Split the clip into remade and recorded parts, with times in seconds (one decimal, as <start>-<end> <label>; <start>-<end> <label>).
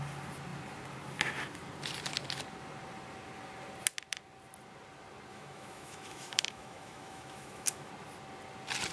0.0-5.3 recorded; 5.3-7.9 remade; 7.9-8.9 recorded